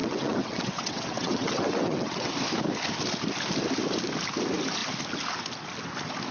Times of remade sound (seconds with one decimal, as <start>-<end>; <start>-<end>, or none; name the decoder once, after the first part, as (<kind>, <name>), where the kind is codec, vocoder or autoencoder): 0.0-2.3 (vocoder, WaveNeXt)